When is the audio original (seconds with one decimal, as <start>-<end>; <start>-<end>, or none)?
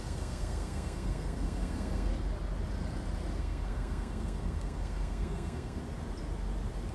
2.1-3.4; 5.8-6.9